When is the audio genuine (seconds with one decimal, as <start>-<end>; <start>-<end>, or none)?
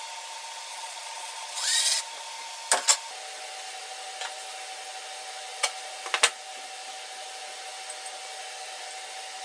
0.0-0.7; 2.0-9.4